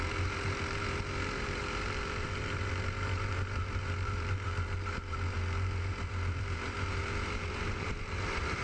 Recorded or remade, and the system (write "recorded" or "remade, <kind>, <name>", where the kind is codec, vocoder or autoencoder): remade, vocoder, BigVGAN v2